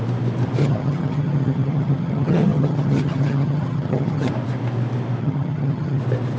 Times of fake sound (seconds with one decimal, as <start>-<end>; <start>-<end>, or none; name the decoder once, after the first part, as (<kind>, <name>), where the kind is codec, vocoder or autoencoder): 0.6-4.3 (vocoder, HiFi-GAN); 5.2-6.0

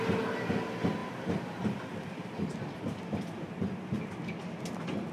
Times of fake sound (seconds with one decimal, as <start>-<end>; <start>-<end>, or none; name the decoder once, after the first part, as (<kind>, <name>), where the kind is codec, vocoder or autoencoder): 1.0-4.1 (vocoder, BigVGAN v2)

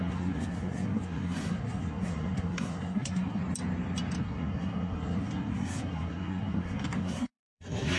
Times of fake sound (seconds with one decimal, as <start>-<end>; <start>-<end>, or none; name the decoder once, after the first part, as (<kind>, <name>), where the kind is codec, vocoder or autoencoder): 0.0-3.4 (codec, SNAC); 4.2-8.0

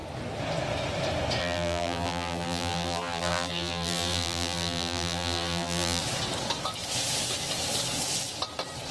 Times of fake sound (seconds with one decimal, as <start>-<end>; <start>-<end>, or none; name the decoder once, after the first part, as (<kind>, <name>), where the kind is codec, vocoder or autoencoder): 1.4-6.0 (vocoder, BigVGAN v2)

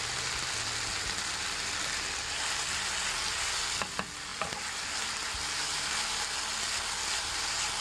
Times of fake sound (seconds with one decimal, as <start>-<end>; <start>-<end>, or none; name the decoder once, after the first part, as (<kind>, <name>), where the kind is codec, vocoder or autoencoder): none

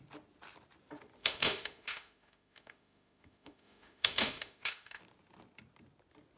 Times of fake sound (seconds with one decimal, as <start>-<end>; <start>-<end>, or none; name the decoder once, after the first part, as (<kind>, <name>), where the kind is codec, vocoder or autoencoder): 1.2-5.0 (autoencoder, DAC-VAE)